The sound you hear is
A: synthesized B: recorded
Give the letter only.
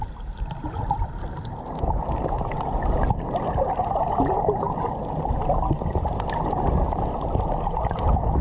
B